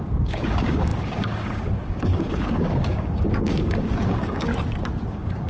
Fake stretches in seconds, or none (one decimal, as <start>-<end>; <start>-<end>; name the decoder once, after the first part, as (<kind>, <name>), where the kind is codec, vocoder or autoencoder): 0.0-4.5 (codec, DAC); 5.1-5.5